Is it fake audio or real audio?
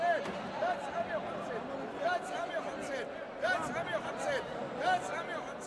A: real